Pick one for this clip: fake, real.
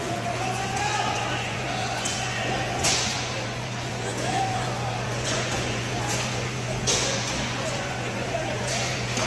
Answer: fake